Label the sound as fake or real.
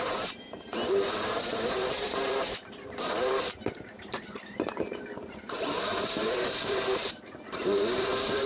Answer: fake